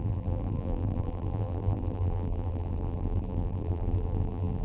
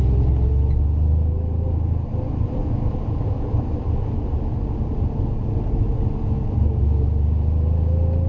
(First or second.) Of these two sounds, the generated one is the first